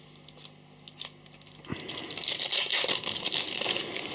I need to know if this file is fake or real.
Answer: real